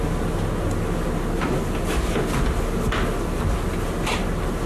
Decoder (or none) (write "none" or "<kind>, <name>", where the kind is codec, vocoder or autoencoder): none